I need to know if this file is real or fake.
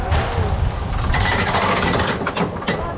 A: real